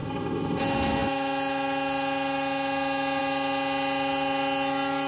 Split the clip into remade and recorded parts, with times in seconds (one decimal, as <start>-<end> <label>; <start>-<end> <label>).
0.0-0.6 remade; 0.6-5.1 recorded